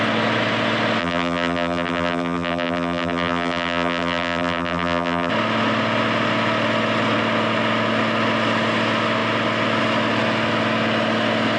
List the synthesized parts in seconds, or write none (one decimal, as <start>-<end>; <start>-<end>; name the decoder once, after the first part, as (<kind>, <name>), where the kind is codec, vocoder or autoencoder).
1.0-5.3 (vocoder, BigVGAN v2)